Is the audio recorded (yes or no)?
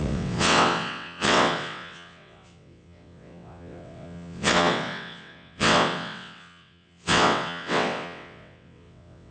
no